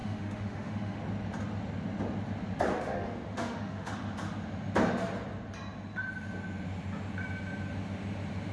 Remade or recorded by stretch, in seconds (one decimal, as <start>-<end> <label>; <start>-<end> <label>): 0.0-1.0 remade; 1.0-2.7 recorded; 2.7-3.9 remade; 3.9-8.5 recorded